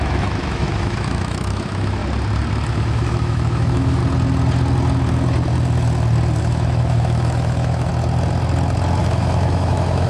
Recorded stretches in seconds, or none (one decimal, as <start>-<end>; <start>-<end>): 2.0-2.7; 4.0-6.4; 7.9-9.0